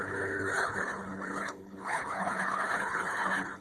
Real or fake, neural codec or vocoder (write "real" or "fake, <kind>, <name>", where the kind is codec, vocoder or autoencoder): fake, codec, HILCodec